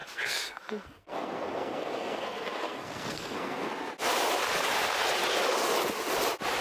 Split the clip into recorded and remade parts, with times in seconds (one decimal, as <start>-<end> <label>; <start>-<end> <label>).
0.0-3.7 remade; 3.7-6.6 recorded